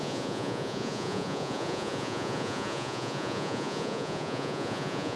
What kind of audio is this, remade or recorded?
remade